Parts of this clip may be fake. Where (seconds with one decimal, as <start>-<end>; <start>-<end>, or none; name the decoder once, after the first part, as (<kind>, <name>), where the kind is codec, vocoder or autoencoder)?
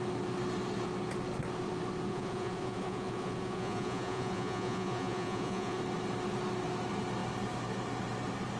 2.1-5.8 (vocoder, Vocos)